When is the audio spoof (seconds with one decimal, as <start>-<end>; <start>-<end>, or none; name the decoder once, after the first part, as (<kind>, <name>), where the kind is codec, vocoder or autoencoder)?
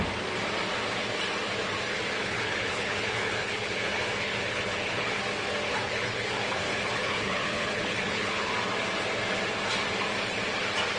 2.2-5.2 (codec, HILCodec); 5.7-8.5